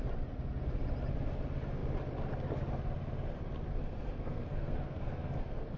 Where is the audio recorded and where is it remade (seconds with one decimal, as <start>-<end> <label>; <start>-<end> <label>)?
0.0-3.7 recorded; 3.7-5.8 remade